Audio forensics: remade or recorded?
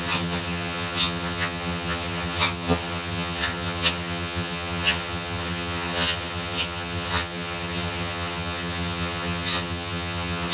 remade